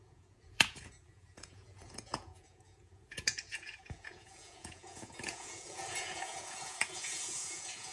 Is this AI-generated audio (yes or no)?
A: yes